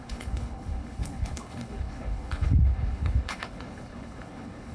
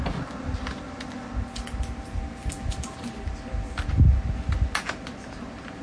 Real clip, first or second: second